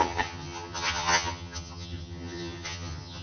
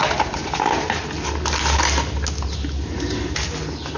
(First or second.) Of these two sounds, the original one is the second